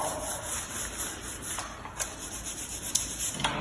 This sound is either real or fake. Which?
real